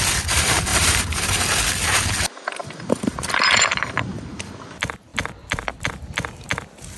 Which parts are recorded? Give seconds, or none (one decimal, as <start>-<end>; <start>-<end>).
0.0-0.7; 1.4-2.6; 4.2-7.0